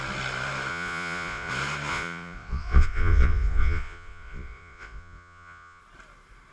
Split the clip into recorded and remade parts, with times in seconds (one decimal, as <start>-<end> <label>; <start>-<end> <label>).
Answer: 0.0-0.7 recorded; 0.7-1.5 remade; 1.5-1.9 recorded; 1.9-5.8 remade; 5.8-6.5 recorded